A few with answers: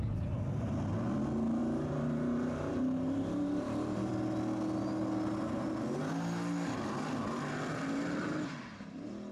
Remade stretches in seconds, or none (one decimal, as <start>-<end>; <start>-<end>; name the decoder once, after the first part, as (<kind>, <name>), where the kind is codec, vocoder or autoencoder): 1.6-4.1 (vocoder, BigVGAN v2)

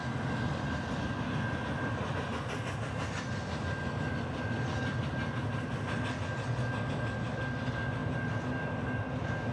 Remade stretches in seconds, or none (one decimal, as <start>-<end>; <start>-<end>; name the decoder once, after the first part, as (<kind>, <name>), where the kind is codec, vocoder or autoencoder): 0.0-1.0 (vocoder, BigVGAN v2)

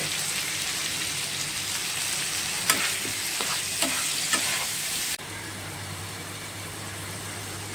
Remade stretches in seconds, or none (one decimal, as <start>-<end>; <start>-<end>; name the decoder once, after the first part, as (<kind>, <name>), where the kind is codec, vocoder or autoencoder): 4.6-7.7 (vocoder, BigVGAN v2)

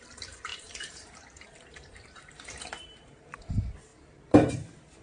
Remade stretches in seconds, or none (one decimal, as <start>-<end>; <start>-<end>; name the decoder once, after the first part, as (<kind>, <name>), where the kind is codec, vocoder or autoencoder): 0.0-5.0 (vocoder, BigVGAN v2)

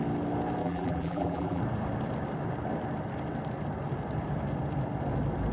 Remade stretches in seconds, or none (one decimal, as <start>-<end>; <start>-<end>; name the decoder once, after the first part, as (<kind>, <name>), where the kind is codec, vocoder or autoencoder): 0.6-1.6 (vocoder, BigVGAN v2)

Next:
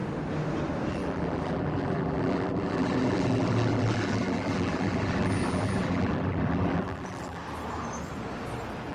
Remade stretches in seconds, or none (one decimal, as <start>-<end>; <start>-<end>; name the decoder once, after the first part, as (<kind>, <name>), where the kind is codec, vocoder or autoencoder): 0.9-7.4 (vocoder, BigVGAN v2)

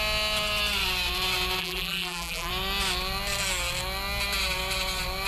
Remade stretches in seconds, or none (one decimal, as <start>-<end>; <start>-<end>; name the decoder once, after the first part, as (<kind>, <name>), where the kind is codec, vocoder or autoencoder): 1.6-2.5 (vocoder, BigVGAN v2)